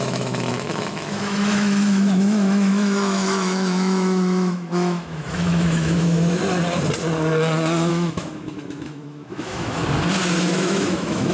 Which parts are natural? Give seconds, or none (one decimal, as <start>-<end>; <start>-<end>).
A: 6.4-7.9; 9.8-10.4